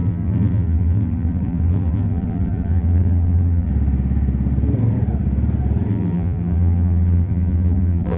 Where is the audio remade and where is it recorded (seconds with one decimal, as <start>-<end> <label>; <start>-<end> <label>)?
0.0-3.7 remade; 3.7-5.9 recorded; 5.9-8.2 remade